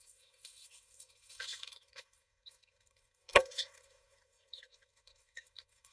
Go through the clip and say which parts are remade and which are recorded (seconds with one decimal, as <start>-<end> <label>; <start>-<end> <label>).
0.0-5.9 remade